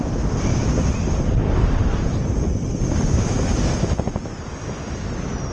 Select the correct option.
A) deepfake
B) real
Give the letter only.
B